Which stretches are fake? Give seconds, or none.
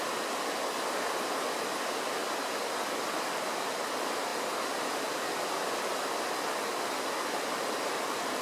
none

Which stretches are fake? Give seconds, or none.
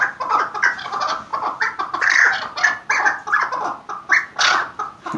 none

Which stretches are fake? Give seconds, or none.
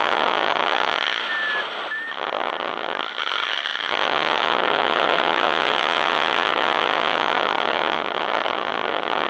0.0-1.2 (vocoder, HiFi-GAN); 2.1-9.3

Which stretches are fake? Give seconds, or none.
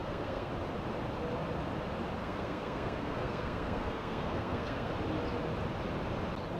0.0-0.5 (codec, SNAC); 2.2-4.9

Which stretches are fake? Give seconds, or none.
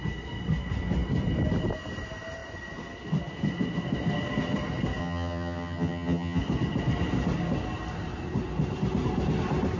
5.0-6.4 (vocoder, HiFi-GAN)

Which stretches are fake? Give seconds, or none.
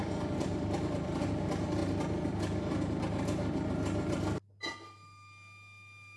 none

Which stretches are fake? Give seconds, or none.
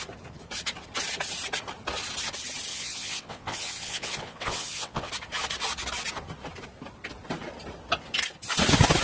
2.7-5.1 (vocoder, WaveNeXt)